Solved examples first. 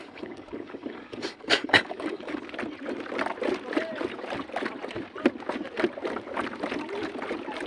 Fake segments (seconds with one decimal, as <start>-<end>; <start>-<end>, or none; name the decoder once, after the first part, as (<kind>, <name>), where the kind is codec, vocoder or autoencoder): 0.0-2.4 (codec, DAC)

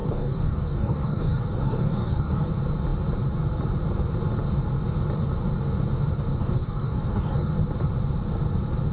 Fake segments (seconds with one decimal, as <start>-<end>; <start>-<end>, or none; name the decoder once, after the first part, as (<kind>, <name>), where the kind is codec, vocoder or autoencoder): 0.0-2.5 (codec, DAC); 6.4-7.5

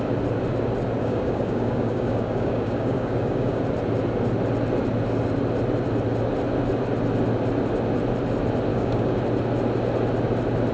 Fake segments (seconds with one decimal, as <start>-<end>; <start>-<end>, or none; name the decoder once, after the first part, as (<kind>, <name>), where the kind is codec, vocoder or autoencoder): 1.0-3.6 (codec, DAC); 8.7-9.2

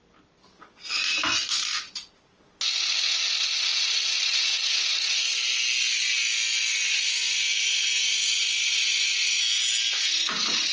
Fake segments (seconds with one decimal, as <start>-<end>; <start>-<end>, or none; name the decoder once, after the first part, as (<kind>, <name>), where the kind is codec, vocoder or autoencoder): none

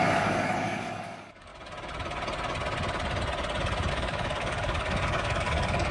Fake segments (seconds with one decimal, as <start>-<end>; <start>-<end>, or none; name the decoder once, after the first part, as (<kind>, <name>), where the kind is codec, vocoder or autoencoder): 0.0-1.5 (codec, DAC); 3.9-5.9